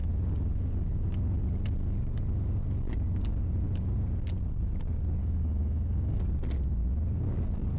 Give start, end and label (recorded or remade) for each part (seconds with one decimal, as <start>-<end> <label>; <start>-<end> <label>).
0.0-5.2 recorded; 5.2-6.2 remade; 6.2-7.8 recorded